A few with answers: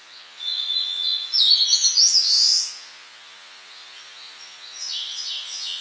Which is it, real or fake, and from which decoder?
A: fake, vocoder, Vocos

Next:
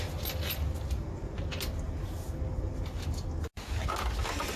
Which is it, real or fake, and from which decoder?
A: real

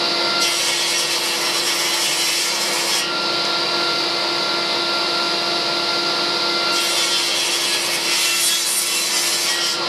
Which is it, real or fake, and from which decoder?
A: real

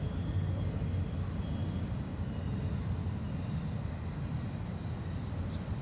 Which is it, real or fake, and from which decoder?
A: real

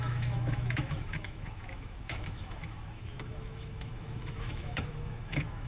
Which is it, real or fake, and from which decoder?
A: fake, autoencoder, DAC-VAE